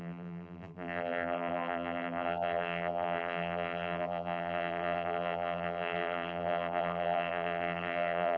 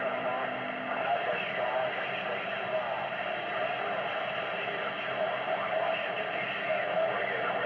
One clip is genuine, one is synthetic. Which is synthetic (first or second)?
first